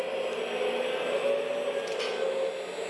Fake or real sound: real